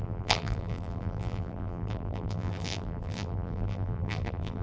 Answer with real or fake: fake